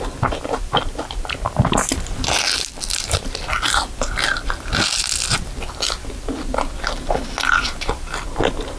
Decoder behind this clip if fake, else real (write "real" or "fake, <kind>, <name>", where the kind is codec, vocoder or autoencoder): real